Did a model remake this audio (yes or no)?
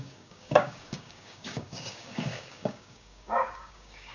yes